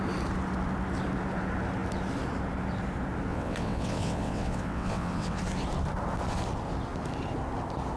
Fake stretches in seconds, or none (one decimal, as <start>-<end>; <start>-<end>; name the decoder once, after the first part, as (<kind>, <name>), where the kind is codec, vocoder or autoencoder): 3.3-5.4 (vocoder, WaveNeXt)